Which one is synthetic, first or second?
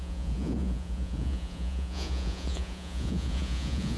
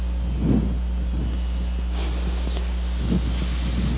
first